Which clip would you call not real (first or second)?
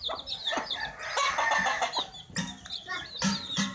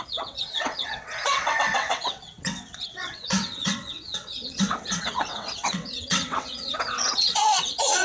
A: second